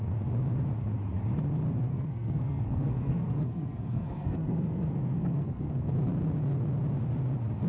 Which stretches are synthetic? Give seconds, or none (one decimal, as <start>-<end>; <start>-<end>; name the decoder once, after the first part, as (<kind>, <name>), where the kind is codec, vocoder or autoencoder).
1.9-5.9 (codec, SNAC)